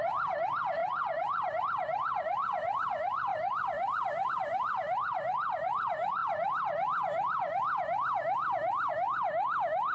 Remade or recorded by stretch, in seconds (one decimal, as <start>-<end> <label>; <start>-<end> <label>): 0.0-6.2 remade; 6.2-8.9 recorded; 8.9-9.9 remade